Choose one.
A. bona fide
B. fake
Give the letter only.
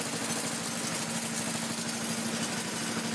A